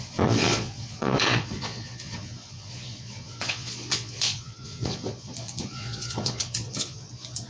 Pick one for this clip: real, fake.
fake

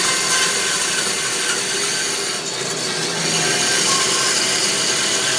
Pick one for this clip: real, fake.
real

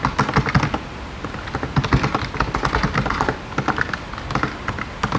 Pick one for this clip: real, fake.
real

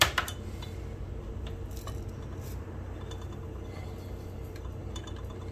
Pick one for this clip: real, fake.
real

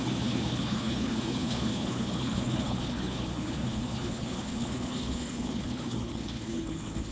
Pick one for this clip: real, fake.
fake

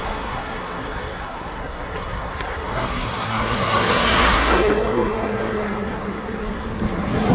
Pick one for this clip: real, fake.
fake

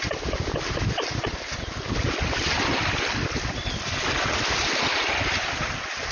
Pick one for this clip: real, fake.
real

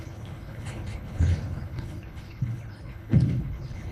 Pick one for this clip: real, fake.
fake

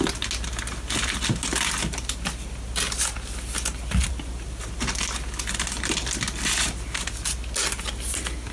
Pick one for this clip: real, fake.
real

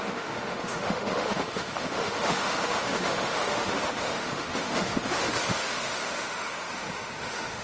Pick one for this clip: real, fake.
fake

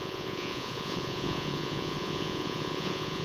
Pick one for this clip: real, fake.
fake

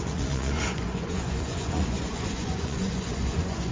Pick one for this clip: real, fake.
fake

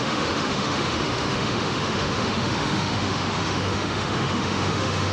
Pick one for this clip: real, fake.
fake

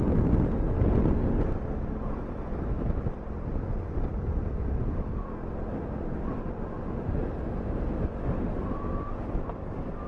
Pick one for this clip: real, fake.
real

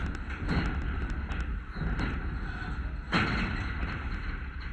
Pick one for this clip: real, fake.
real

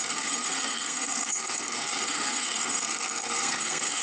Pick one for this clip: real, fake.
fake